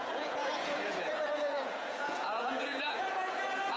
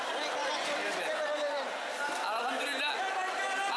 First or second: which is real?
second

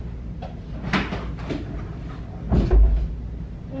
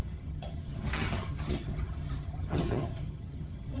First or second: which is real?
first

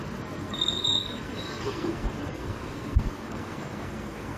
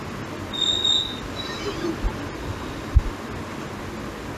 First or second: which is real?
second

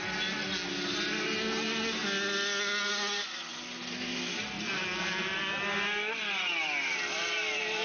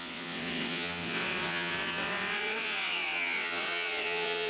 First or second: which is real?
first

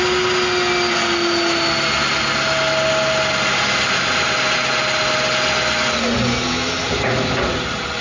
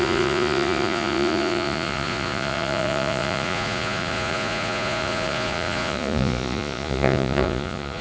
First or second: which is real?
first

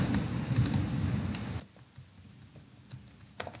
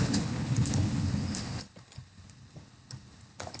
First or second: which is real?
first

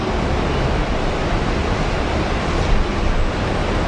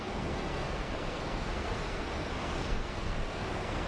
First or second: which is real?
first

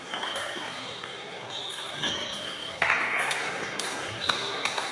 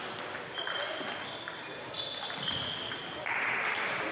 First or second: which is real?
second